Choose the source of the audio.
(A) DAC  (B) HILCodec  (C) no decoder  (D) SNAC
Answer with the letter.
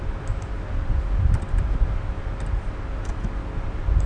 C